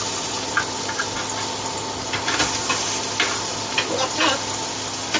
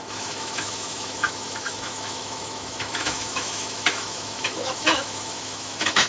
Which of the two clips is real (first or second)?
first